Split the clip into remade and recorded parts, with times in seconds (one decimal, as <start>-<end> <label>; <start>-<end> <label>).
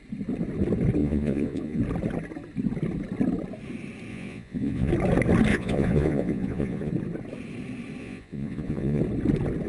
0.0-1.0 recorded; 1.0-1.8 remade; 1.8-4.1 recorded; 4.1-4.9 remade; 4.9-5.5 recorded; 5.5-6.9 remade; 6.9-8.0 recorded; 8.0-9.0 remade; 9.0-9.7 recorded